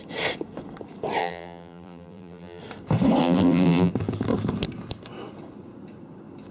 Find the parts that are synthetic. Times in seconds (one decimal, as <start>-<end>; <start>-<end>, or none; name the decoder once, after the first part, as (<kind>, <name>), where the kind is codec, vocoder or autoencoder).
1.2-2.6 (vocoder, BigVGAN v2); 3.2-3.9